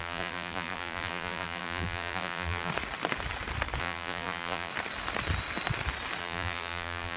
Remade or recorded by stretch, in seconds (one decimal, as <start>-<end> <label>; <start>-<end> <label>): 0.0-2.7 remade; 2.7-3.8 recorded; 3.8-4.7 remade; 4.7-6.2 recorded; 6.2-7.2 remade